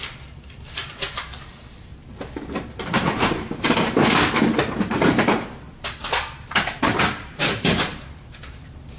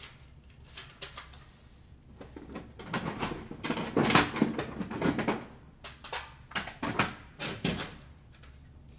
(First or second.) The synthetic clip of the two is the first